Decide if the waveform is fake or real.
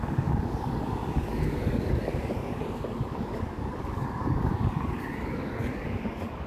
fake